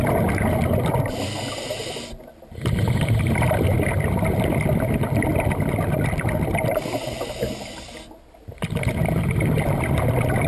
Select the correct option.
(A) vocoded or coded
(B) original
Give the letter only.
B